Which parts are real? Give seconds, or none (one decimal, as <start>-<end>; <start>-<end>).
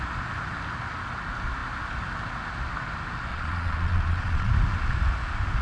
0.0-3.3; 4.5-5.6